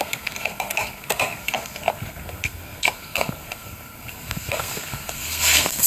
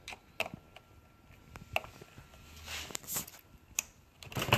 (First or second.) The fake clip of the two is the first